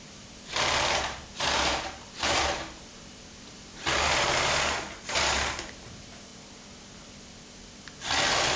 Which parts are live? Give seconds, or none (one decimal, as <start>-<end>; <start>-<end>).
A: 6.3-8.6